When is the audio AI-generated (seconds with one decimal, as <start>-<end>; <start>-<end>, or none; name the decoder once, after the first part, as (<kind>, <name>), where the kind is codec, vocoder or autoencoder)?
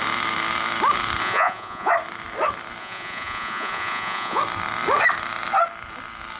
1.2-1.9 (vocoder, Vocos); 2.8-4.4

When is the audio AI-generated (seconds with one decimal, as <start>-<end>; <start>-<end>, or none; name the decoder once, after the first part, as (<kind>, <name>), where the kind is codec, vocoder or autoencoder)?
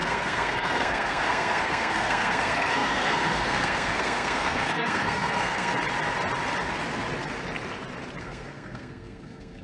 0.0-5.7 (codec, SNAC); 8.2-9.6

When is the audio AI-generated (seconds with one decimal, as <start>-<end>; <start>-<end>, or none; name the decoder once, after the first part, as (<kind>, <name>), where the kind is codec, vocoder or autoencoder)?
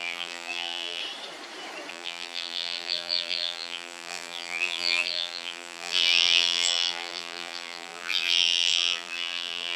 0.0-1.0 (vocoder, BigVGAN v2); 1.9-9.8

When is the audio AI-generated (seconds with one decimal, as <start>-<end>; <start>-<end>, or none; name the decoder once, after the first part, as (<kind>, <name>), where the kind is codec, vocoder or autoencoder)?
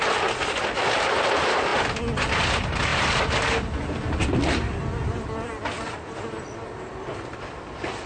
none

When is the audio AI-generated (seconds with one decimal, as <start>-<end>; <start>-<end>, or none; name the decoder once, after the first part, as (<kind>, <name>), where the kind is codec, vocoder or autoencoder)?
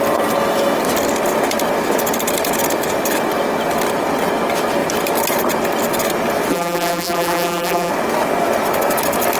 6.5-7.9 (vocoder, BigVGAN v2)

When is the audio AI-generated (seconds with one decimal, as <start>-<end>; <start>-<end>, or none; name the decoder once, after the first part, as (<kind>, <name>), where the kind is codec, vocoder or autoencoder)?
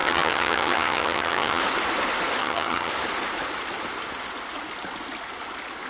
0.0-1.6 (vocoder, HiFi-GAN); 2.4-2.9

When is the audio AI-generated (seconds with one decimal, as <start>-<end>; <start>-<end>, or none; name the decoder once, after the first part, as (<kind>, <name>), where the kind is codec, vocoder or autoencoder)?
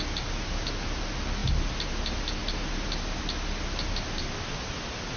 none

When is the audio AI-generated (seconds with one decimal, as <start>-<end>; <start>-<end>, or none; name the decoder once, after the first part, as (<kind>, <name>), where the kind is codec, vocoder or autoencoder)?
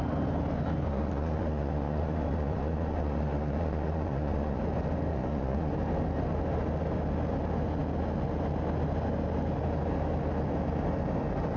0.9-4.6 (vocoder, Vocos); 5.1-5.7